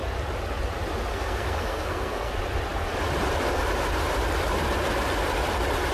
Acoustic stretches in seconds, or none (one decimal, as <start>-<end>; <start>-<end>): 0.0-1.1; 2.3-5.9